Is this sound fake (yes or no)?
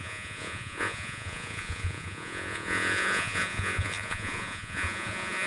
yes